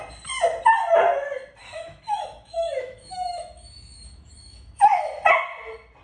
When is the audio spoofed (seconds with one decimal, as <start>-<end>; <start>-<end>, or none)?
1.6-5.2